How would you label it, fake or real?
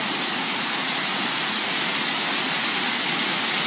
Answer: fake